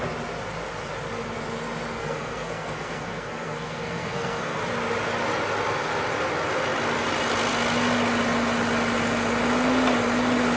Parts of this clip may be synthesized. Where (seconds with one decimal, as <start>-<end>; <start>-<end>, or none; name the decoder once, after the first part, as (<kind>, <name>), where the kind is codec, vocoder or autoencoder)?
2.0-4.6 (codec, SNAC)